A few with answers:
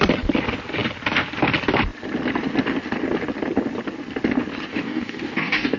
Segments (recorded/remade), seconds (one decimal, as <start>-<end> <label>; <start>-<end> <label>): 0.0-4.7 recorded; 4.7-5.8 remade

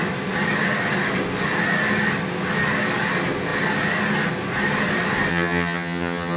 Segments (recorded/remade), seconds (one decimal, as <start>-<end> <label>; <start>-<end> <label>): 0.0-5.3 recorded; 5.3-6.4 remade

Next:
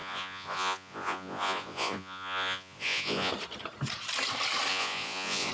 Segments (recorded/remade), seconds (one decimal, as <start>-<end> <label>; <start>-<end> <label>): 0.0-3.3 remade; 3.3-4.7 recorded; 4.7-5.5 remade